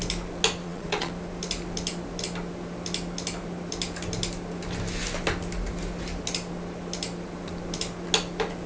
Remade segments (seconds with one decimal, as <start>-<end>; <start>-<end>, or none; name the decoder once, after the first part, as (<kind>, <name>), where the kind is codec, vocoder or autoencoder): 0.6-1.1 (vocoder, Vocos)